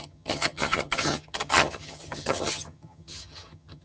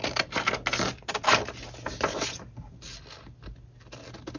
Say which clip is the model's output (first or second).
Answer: first